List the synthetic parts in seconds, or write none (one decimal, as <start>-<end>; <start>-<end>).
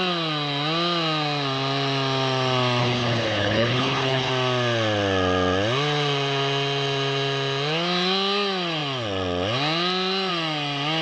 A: 2.8-4.3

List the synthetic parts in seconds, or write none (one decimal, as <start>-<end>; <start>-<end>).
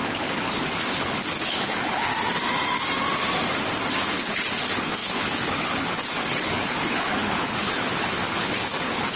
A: 0.0-2.1; 4.1-9.2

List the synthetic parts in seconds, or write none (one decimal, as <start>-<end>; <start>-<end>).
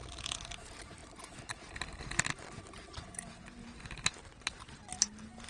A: none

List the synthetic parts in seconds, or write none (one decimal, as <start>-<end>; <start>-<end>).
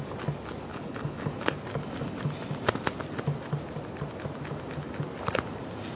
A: 0.7-1.3